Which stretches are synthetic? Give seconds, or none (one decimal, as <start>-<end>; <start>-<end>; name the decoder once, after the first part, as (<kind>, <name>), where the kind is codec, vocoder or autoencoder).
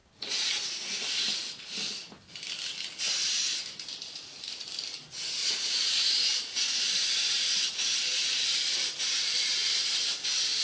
5.4-6.1 (vocoder, Vocos)